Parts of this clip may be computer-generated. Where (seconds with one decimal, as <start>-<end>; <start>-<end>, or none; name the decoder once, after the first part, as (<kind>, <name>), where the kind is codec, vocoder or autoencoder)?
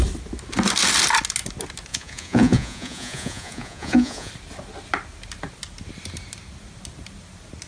1.9-4.3 (vocoder, Vocos)